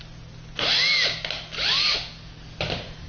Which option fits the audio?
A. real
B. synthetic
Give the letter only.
A